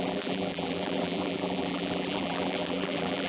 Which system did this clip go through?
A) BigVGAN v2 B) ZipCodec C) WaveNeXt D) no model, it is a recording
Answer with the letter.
A